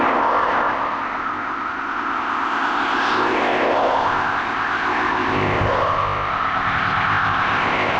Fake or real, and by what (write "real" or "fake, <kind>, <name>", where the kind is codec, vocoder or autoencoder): fake, codec, ZipCodec